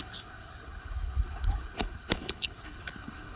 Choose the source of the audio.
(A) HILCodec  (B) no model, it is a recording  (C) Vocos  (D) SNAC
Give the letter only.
A